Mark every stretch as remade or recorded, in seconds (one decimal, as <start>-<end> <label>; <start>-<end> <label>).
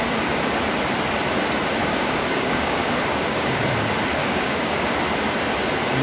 0.0-1.8 recorded; 1.8-3.6 remade; 3.6-4.2 recorded; 4.2-4.7 remade; 4.7-6.0 recorded